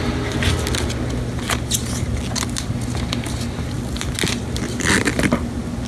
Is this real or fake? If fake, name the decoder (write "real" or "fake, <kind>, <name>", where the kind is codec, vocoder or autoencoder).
real